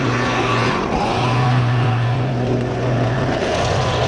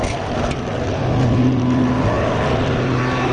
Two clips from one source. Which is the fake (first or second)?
first